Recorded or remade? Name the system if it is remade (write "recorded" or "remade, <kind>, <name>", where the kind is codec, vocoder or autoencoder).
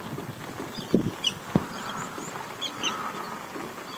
recorded